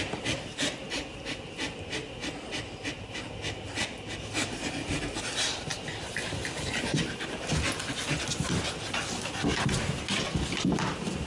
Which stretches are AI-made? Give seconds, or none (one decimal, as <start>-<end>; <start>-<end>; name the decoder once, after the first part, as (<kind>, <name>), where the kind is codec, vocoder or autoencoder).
none